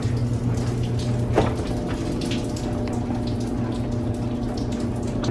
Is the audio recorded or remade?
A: recorded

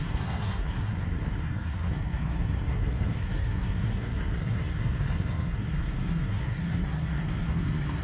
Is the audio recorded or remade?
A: remade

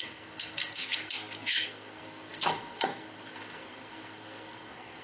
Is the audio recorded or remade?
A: remade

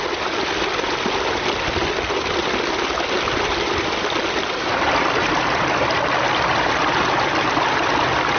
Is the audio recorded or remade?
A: recorded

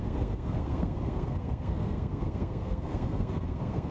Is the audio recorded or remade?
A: remade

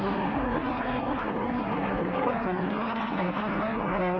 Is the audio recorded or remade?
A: remade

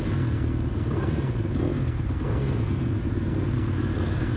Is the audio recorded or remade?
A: remade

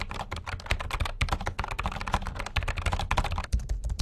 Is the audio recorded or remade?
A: recorded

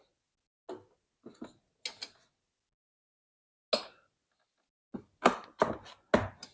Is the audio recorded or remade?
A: recorded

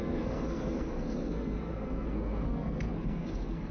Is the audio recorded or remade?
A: remade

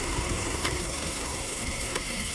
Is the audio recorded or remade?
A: remade